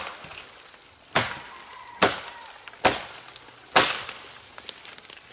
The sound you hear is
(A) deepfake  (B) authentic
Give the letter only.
B